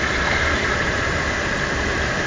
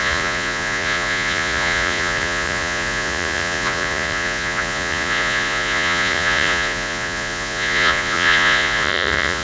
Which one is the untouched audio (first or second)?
first